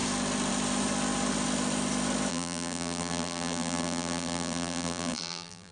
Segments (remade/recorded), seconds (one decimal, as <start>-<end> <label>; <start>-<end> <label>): 0.0-2.3 recorded; 2.3-5.7 remade

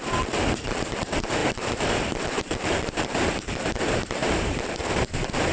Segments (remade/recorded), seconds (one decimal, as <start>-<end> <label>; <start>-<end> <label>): 0.0-5.5 remade

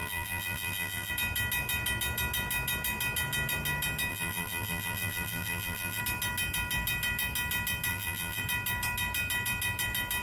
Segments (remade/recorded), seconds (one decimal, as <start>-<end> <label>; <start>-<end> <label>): 0.0-1.1 remade; 1.1-4.1 recorded; 4.1-6.0 remade; 6.0-7.9 recorded; 7.9-8.4 remade; 8.4-10.2 recorded